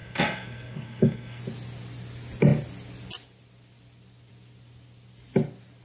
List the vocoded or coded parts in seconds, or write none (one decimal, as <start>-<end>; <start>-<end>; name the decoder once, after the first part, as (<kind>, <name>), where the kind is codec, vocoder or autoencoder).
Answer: 0.0-1.4 (codec, SNAC)